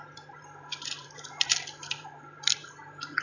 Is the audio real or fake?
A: fake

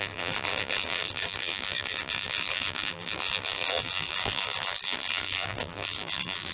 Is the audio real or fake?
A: fake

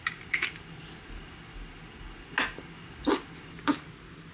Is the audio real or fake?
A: real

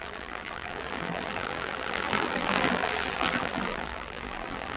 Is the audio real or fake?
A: fake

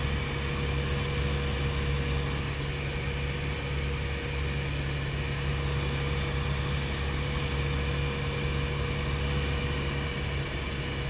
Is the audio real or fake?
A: real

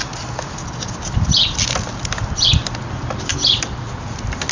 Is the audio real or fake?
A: real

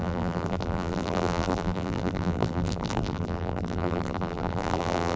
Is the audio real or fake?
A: fake